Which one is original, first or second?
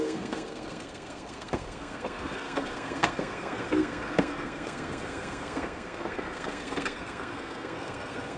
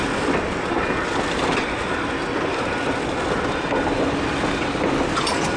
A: second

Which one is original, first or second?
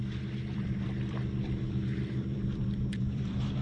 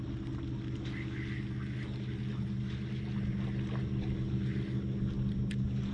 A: second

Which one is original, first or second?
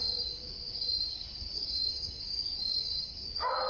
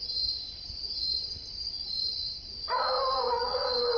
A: second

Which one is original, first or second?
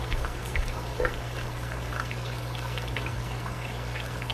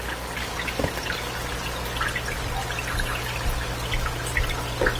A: second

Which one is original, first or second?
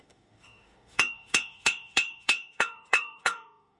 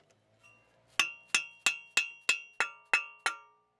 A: second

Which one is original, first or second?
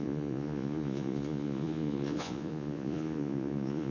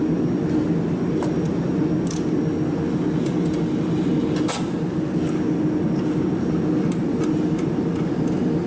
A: second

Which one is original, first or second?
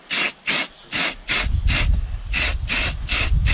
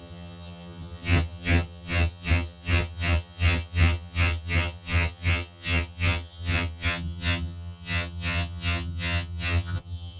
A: first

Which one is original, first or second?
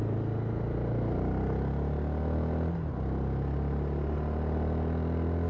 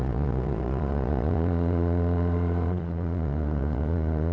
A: first